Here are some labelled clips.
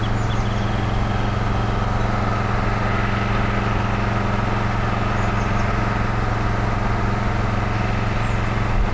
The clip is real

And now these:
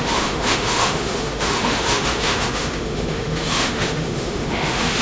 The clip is fake